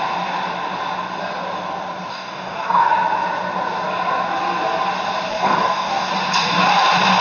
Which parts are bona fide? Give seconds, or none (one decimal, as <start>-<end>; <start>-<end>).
0.0-2.1; 2.9-5.3; 6.1-7.2